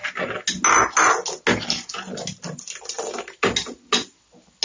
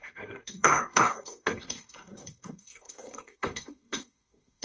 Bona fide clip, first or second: first